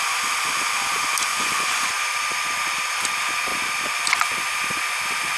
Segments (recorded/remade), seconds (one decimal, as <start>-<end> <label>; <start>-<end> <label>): 0.0-1.3 recorded; 1.3-2.0 remade; 2.0-5.4 recorded